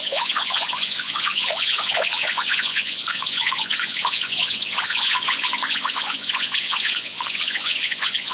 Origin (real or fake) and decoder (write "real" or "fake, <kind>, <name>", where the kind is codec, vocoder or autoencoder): fake, vocoder, Vocos